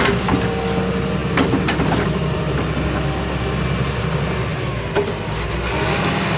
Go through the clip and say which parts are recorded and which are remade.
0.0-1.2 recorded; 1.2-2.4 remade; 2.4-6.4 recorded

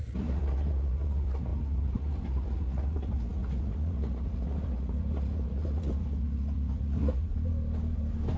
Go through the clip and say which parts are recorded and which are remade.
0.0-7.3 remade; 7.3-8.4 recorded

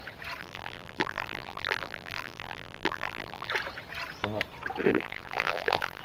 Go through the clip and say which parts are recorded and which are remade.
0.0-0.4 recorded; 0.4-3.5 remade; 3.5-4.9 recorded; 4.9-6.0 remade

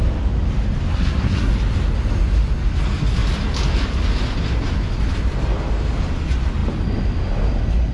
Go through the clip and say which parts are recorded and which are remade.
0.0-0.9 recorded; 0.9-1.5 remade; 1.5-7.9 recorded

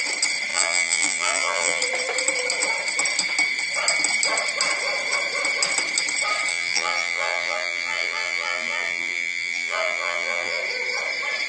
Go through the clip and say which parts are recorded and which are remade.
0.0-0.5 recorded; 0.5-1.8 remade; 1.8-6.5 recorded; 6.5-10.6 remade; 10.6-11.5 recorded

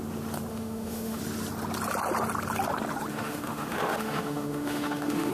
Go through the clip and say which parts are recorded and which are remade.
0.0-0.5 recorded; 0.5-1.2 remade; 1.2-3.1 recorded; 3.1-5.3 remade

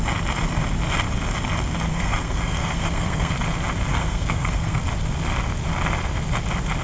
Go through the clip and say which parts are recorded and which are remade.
0.0-1.9 recorded; 1.9-3.3 remade; 3.3-3.9 recorded; 3.9-4.8 remade; 4.8-6.8 recorded